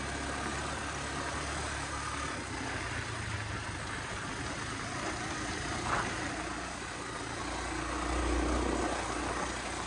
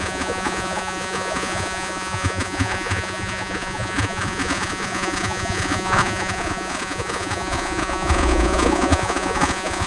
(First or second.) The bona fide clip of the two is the first